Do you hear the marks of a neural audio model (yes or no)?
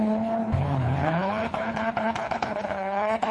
yes